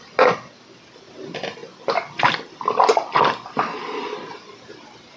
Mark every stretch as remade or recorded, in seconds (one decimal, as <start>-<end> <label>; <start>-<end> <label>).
0.0-1.6 recorded; 1.6-4.7 remade; 4.7-5.2 recorded